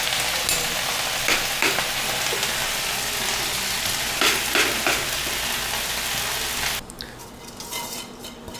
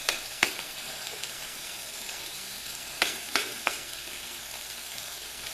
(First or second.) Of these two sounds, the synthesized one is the second